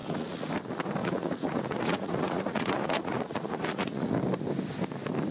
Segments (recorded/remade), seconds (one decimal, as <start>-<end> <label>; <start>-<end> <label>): 0.0-0.5 remade; 0.5-1.0 recorded; 1.0-4.2 remade; 4.2-5.3 recorded